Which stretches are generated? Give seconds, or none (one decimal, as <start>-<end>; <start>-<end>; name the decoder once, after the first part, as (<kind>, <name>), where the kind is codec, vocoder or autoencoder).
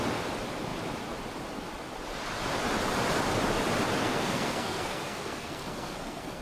4.0-6.4 (codec, SNAC)